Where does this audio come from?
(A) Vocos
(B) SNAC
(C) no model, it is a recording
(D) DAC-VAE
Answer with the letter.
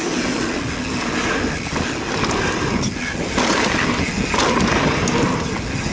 C